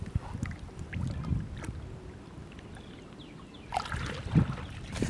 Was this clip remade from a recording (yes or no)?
no